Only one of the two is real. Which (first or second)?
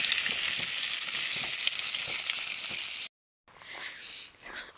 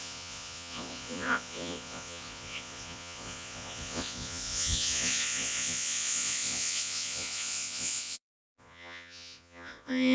first